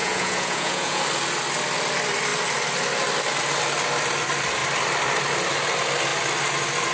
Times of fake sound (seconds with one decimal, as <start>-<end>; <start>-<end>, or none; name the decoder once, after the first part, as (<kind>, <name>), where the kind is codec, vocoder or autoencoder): 0.0-1.0 (vocoder, Vocos)